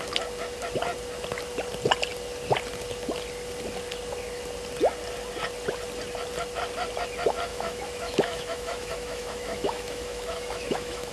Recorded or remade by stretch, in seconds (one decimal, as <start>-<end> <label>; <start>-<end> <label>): 0.0-7.5 recorded; 7.5-11.1 remade